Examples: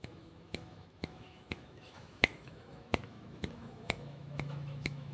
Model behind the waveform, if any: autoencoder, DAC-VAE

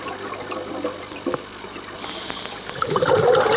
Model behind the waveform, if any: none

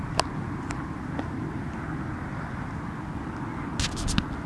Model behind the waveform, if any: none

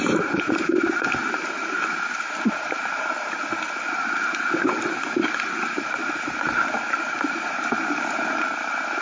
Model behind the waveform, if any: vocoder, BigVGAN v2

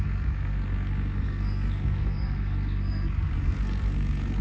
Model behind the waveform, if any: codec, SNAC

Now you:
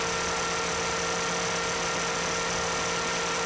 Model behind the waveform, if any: none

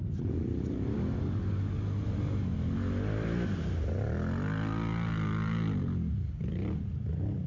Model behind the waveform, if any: none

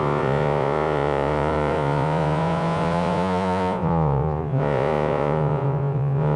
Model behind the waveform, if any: vocoder, Vocos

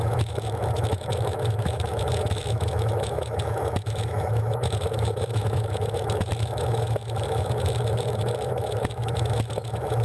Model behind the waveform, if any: autoencoder, DAC-VAE